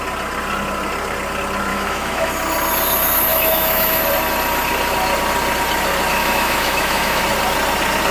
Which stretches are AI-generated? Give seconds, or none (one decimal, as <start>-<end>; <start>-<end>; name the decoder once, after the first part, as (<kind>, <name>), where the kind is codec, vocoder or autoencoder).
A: 1.7-2.3 (autoencoder, DAC-VAE); 3.3-4.0; 6.2-7.2